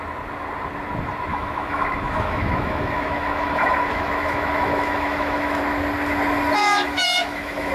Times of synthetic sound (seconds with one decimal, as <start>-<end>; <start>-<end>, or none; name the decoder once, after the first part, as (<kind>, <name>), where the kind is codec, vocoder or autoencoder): 1.3-5.6 (autoencoder, DAC-VAE); 6.6-7.7